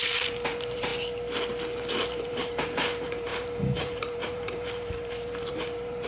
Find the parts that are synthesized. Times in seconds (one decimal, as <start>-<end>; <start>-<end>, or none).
0.0-0.9; 2.1-6.1